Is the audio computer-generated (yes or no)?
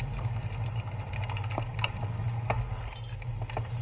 no